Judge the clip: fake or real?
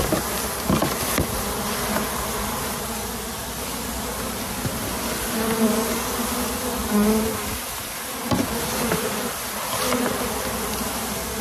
real